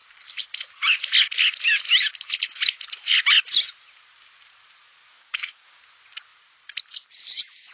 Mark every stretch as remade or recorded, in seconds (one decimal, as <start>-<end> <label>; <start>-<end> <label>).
0.0-5.1 recorded; 5.1-5.8 remade; 5.8-7.7 recorded

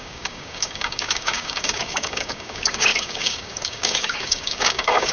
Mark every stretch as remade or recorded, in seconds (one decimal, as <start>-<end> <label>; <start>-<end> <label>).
0.0-5.1 remade

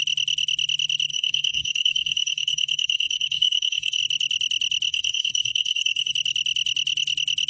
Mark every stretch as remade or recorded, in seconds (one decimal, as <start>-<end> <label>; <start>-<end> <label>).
0.0-1.1 recorded; 1.1-4.0 remade; 4.0-4.9 recorded; 4.9-6.1 remade; 6.1-7.5 recorded

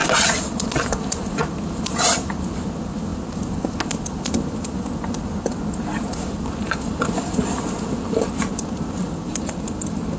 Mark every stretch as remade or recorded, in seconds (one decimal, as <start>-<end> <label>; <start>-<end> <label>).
0.0-10.2 recorded

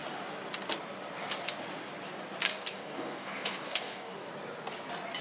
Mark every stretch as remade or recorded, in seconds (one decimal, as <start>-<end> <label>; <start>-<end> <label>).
0.0-2.5 recorded; 2.5-4.3 remade; 4.3-5.2 recorded

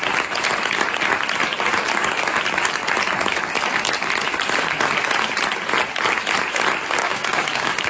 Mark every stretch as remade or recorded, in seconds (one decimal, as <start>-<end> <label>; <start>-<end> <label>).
0.0-7.0 recorded; 7.0-7.9 remade